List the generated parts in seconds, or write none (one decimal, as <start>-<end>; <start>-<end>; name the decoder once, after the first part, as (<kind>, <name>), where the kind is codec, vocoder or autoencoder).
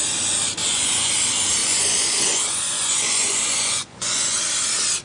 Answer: 0.6-1.1 (vocoder, Vocos); 1.6-4.4